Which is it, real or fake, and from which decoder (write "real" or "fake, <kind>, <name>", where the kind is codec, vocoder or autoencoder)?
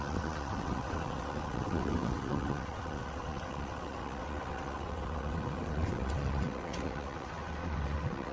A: fake, vocoder, WaveNeXt